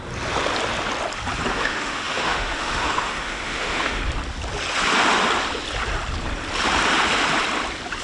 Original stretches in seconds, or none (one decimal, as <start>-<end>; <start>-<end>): 0.0-1.5; 4.0-8.0